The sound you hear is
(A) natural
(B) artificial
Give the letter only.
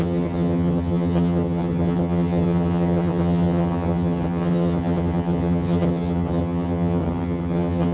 B